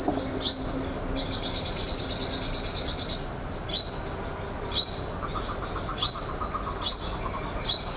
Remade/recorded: recorded